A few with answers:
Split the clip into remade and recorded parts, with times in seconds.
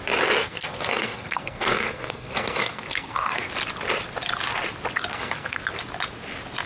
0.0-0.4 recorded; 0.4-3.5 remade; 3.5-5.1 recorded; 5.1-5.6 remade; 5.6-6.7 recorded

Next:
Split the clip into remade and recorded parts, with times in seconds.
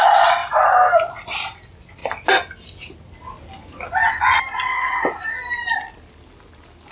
0.0-4.7 recorded; 4.7-5.2 remade; 5.2-6.9 recorded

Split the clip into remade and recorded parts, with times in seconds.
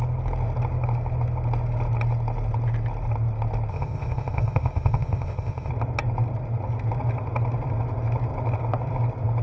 0.0-3.7 recorded; 3.7-5.7 remade; 5.7-9.4 recorded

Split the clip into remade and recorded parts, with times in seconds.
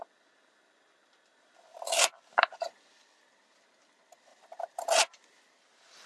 0.0-1.7 recorded; 1.7-2.6 remade; 2.6-4.3 recorded; 4.3-5.4 remade; 5.4-6.1 recorded